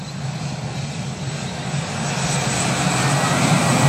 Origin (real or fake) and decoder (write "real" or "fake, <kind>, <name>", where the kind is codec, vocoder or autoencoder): real